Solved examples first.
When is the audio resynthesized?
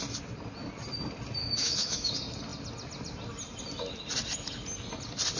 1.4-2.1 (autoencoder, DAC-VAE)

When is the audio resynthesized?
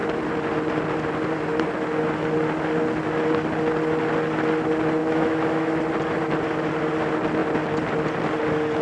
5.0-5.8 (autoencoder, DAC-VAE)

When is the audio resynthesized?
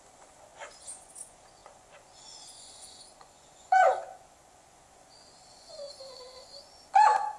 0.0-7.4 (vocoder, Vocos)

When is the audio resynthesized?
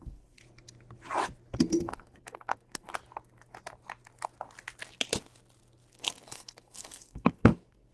0.0-0.4 (codec, SNAC); 1.6-2.9; 5.9-7.9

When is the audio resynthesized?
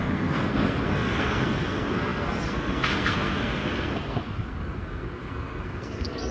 0.0-6.3 (codec, SNAC)